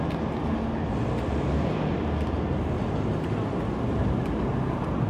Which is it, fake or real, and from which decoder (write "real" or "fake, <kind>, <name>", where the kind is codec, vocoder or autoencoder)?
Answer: real